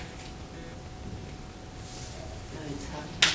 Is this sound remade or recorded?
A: recorded